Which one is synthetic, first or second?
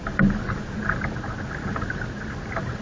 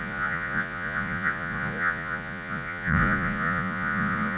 second